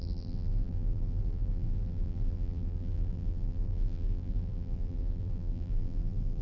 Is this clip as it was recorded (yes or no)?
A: no